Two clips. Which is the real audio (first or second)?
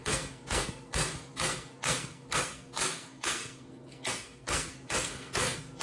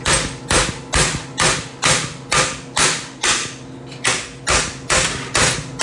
second